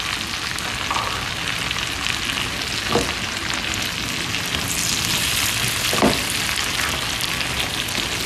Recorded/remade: recorded